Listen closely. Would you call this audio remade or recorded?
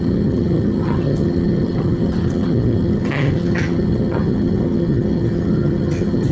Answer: remade